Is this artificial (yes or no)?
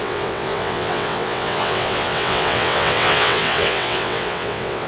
yes